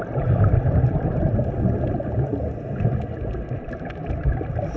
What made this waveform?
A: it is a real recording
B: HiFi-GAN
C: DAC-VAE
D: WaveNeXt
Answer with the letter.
A